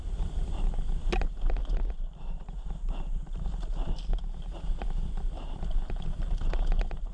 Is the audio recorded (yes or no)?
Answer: yes